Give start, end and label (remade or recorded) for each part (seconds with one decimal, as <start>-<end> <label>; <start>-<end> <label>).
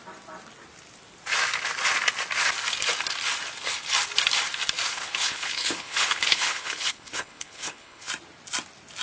0.0-4.9 recorded; 4.9-8.1 remade; 8.1-9.0 recorded